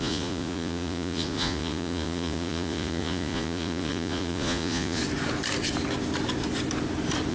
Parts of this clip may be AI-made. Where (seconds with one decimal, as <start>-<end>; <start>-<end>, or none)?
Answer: 0.0-5.0